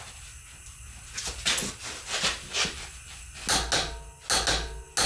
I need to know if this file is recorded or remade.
recorded